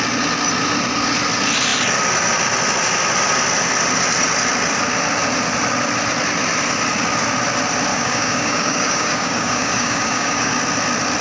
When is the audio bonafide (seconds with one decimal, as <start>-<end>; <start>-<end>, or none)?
0.0-7.9; 10.5-11.2

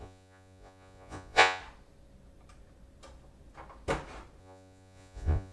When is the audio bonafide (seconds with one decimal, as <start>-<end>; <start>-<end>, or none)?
1.6-4.4

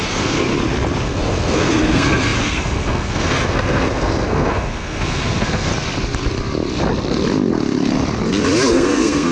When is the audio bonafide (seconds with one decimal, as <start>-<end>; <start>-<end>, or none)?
0.5-1.0; 5.7-8.7

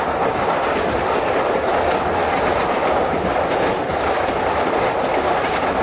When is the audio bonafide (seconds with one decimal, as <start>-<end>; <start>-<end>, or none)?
0.0-5.8

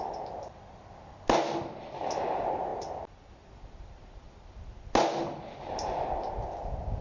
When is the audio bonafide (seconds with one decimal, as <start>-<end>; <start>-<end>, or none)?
0.0-7.0

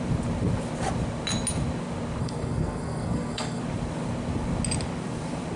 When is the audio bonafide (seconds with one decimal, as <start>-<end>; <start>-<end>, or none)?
0.0-2.2; 3.6-5.6

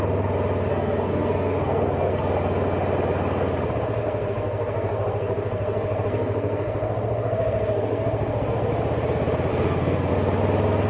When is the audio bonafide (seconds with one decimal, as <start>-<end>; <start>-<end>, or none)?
0.0-0.7; 2.2-4.0; 8.7-9.5; 10.1-10.9

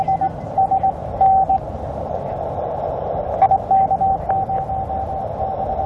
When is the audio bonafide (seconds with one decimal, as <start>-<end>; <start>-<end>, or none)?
0.0-5.9